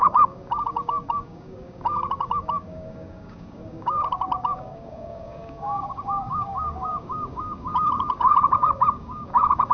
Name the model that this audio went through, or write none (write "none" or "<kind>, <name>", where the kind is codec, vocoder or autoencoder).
codec, DAC